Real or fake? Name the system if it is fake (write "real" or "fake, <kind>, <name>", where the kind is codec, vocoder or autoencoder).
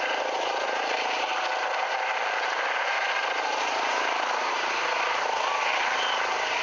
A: real